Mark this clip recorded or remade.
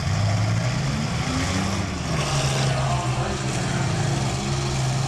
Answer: recorded